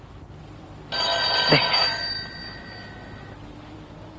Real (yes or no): no